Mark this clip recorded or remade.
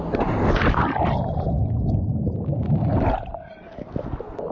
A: recorded